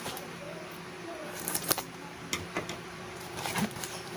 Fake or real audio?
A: fake